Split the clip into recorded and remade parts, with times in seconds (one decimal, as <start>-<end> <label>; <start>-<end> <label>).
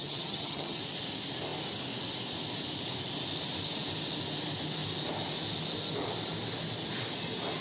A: 0.0-0.8 remade; 0.8-7.6 recorded